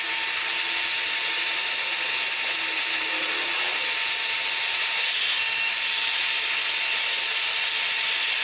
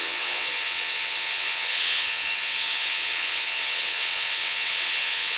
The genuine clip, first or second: first